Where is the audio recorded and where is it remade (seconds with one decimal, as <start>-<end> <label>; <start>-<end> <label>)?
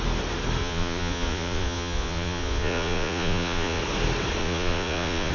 0.0-0.6 recorded; 0.6-3.8 remade; 3.8-4.4 recorded; 4.4-5.3 remade